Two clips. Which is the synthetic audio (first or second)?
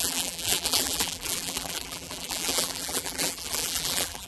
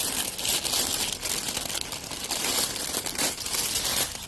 first